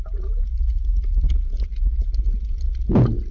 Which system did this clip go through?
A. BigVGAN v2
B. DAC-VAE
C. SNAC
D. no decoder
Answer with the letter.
D